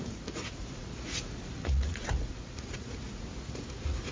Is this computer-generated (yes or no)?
yes